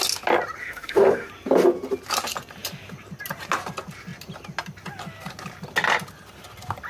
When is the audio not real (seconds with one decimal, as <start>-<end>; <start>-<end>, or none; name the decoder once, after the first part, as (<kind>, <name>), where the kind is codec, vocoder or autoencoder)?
0.6-1.3 (autoencoder, DAC-VAE)

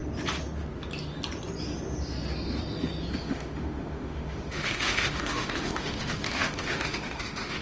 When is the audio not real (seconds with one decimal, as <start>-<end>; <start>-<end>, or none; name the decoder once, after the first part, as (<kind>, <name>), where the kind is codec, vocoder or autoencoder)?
3.2-7.6 (autoencoder, DAC-VAE)

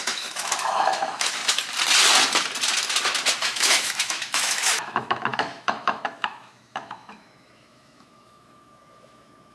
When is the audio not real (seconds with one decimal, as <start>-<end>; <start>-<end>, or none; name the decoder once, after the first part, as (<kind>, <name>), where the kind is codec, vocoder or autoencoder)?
0.0-1.4 (autoencoder, DAC-VAE); 3.4-9.5

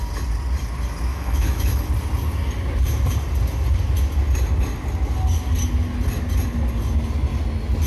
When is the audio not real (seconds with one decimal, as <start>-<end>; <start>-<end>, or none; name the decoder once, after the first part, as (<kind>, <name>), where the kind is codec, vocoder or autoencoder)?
1.1-1.9 (autoencoder, DAC-VAE)

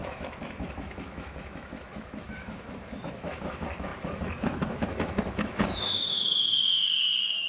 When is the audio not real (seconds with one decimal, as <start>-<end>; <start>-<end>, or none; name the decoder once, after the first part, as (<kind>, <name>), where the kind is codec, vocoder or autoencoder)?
0.0-7.5 (autoencoder, DAC-VAE)

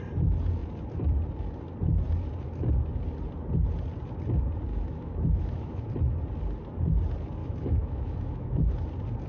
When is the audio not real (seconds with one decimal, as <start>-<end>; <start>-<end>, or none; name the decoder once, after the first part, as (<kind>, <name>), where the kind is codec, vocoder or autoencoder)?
4.7-5.9 (autoencoder, DAC-VAE); 7.4-8.7